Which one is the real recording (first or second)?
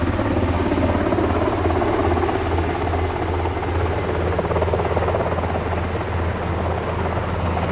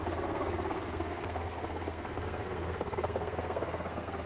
first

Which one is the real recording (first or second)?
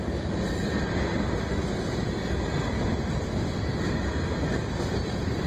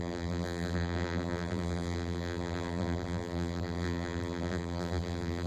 first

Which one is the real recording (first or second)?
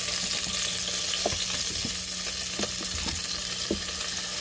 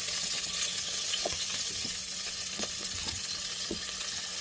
first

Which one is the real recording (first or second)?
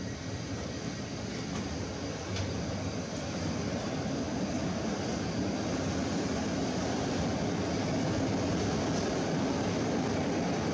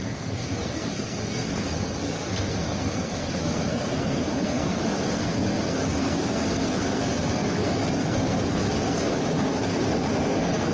first